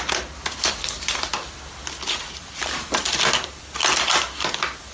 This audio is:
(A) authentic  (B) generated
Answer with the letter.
A